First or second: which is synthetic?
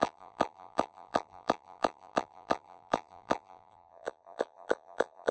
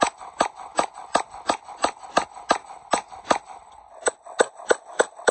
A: first